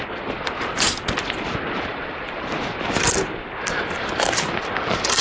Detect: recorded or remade recorded